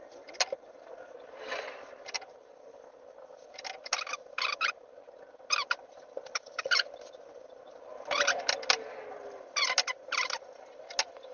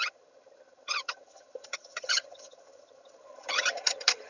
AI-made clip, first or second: second